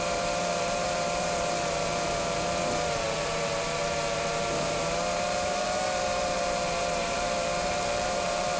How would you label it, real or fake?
fake